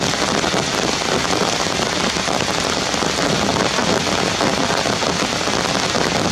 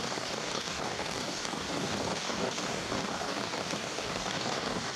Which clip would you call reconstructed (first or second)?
second